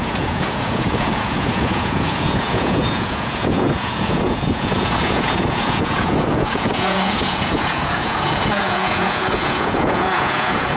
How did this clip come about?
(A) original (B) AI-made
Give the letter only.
B